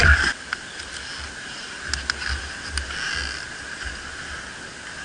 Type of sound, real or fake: real